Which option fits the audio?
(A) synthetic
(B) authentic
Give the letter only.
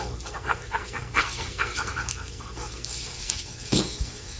A